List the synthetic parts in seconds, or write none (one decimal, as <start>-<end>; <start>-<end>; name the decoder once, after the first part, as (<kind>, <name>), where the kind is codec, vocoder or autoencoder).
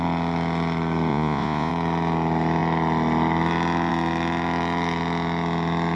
1.1-1.7 (vocoder, Vocos)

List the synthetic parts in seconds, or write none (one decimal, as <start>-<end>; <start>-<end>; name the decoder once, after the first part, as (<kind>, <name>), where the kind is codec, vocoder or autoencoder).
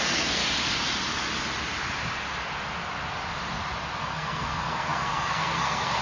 0.0-0.4 (codec, SNAC); 4.0-6.0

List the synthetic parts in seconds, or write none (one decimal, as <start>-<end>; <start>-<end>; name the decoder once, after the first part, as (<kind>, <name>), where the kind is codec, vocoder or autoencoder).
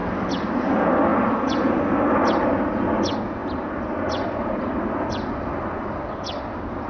none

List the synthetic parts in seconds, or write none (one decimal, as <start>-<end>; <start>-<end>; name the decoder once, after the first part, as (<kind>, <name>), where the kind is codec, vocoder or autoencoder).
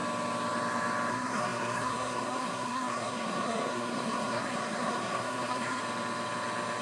1.1-5.8 (codec, SNAC)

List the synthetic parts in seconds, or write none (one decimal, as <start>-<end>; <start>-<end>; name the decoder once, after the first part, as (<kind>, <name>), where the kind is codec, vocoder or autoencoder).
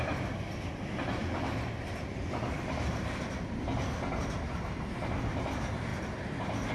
none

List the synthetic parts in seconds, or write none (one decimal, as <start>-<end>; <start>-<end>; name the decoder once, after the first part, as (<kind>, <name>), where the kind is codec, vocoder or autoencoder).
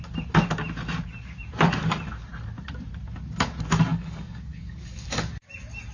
3.9-5.2 (codec, DAC)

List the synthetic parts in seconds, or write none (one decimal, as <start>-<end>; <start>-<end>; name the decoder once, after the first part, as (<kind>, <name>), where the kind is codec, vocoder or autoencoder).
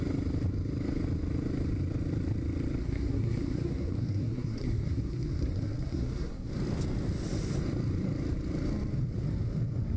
2.8-6.5 (codec, SNAC)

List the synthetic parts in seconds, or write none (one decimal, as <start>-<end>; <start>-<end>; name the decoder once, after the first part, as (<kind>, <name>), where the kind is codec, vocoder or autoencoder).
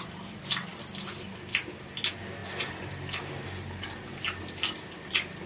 none